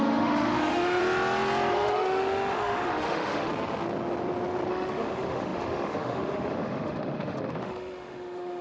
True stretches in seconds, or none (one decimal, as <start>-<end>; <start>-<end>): 1.0-1.7; 3.5-4.7